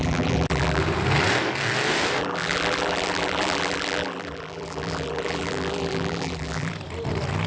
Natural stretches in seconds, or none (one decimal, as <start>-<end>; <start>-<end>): 0.8-2.2; 6.7-7.5